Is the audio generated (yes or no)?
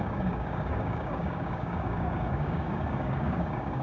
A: yes